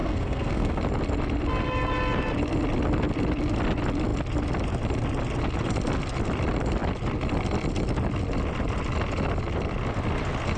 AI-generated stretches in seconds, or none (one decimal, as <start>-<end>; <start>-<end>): 0.0-0.8